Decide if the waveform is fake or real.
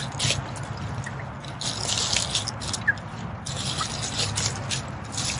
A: real